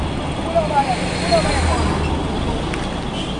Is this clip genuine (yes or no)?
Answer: yes